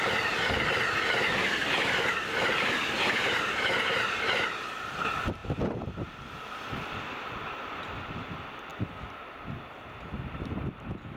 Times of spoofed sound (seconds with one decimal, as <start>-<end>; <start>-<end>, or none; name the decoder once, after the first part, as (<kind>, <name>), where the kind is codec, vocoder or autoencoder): 0.0-8.7 (vocoder, BigVGAN v2); 10.2-11.2

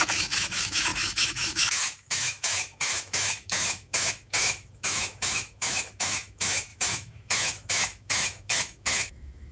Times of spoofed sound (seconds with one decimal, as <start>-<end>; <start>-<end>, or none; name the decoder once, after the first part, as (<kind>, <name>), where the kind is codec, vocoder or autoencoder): 0.0-9.5 (autoencoder, DAC-VAE)

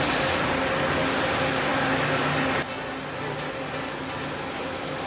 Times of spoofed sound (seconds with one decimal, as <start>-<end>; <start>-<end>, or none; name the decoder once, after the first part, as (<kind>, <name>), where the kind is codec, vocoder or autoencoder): none

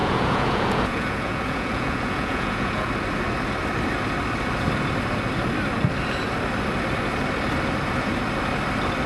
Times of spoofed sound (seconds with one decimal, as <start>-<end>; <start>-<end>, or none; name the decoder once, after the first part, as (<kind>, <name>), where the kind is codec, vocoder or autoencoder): 0.0-2.9 (vocoder, Vocos)

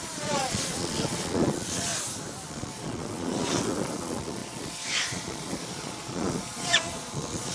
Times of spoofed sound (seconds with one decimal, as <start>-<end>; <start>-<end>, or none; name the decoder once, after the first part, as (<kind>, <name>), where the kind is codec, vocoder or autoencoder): 0.0-1.9 (vocoder, Vocos); 2.5-7.5

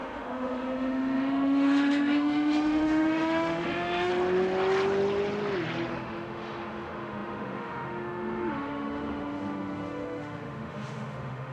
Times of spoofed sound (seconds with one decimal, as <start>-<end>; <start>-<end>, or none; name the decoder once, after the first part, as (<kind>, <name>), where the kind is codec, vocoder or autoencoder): 0.0-4.1 (autoencoder, DAC-VAE); 5.9-11.5

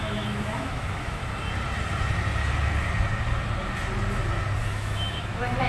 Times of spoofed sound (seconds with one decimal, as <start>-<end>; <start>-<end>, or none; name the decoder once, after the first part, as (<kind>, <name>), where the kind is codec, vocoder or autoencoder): 0.0-1.2 (autoencoder, DAC-VAE); 4.6-5.7